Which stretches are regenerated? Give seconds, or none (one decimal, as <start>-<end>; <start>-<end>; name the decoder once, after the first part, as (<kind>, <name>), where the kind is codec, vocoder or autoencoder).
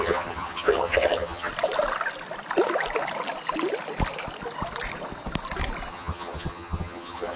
0.0-1.5 (vocoder, HiFi-GAN); 5.9-7.4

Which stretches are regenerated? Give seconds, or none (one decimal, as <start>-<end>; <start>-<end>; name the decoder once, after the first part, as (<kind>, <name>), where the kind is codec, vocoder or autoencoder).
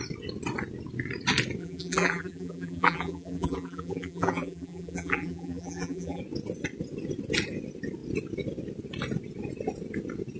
1.6-6.2 (vocoder, BigVGAN v2)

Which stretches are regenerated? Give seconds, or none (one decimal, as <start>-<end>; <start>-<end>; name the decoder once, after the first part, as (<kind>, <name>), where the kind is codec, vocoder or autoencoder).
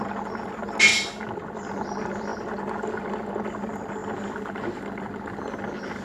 none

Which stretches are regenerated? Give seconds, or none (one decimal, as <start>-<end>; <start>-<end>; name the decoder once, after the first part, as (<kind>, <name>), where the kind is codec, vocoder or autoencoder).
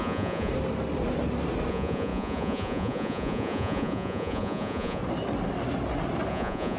0.0-0.5 (vocoder, Vocos); 1.7-5.0; 6.3-6.8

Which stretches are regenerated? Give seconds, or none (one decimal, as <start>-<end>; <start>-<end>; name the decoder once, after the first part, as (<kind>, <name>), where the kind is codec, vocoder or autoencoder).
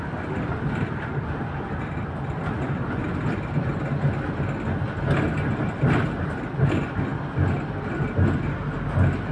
none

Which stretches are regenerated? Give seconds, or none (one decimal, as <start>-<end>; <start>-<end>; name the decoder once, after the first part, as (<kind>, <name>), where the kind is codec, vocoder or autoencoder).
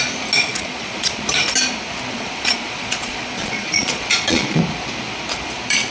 0.5-1.2 (vocoder, Vocos); 2.1-4.6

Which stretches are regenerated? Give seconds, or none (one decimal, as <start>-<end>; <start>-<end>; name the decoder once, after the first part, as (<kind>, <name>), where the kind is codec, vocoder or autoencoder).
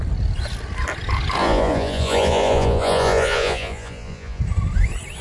1.4-4.4 (vocoder, Vocos)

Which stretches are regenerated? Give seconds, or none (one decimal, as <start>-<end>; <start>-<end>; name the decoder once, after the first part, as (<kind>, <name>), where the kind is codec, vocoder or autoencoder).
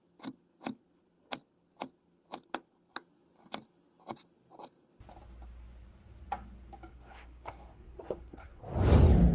6.9-8.6 (codec, SNAC)